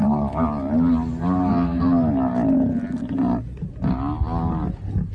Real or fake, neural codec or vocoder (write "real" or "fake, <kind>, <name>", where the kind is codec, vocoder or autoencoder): real